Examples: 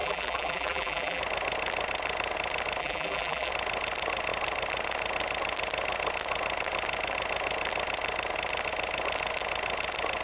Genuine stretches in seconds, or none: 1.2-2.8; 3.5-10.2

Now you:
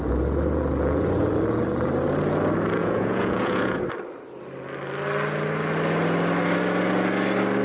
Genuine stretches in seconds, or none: 0.0-2.8; 3.8-7.6